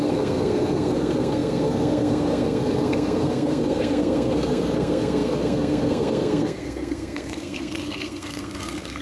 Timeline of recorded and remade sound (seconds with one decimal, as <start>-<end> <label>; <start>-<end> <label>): 0.0-9.0 remade